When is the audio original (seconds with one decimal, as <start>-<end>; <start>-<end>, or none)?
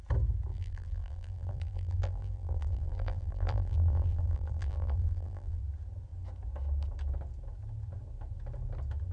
0.0-0.5; 5.6-9.1